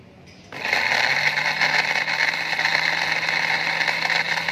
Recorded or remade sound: recorded